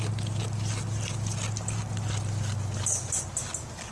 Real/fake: real